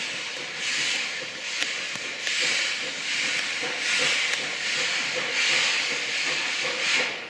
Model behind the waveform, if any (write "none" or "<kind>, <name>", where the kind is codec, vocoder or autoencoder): none